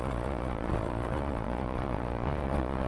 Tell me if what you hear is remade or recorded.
remade